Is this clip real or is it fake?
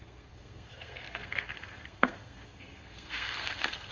fake